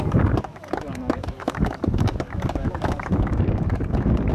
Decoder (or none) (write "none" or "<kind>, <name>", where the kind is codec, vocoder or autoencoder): codec, DAC